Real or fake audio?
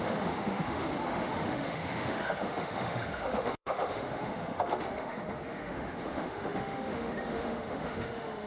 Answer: fake